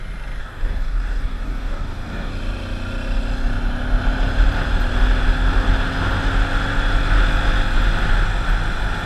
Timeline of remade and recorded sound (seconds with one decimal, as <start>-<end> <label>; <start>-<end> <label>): 0.0-0.4 recorded; 0.4-2.3 remade; 2.3-9.1 recorded